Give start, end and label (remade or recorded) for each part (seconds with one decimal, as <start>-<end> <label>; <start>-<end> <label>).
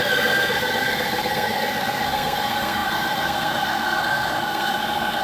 0.0-5.2 remade